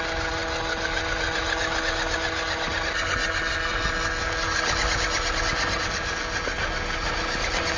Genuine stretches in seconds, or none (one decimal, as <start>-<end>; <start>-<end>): 0.0-7.8